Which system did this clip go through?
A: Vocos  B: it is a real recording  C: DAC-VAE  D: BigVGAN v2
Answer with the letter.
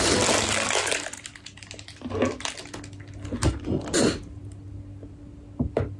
B